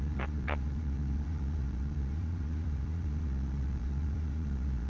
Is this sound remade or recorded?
remade